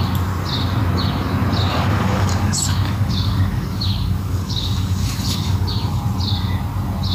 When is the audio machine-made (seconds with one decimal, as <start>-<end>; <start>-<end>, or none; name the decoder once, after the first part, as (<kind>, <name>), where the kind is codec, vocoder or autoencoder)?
1.7-6.0 (codec, DAC)